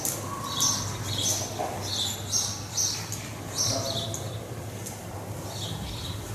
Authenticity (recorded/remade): recorded